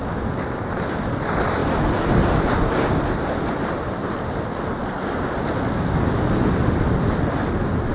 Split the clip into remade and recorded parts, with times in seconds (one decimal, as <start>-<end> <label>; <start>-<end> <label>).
0.0-7.9 recorded